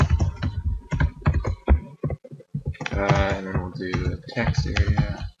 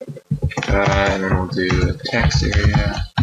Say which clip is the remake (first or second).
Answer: first